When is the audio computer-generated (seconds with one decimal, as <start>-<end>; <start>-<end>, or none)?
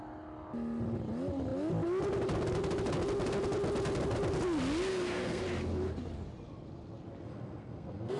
4.9-5.4; 7.3-8.2